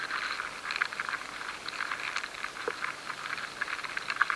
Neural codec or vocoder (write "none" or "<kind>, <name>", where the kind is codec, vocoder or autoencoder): none